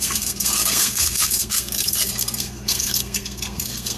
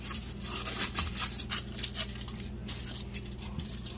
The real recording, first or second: second